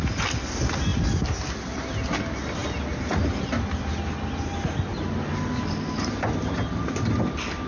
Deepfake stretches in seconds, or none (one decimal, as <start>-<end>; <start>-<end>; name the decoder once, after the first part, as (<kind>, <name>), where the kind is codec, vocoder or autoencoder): none